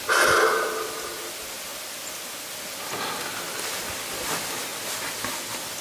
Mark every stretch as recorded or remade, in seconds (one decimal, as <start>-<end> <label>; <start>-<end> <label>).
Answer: 0.0-5.8 recorded